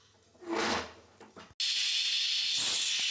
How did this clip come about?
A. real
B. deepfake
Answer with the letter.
A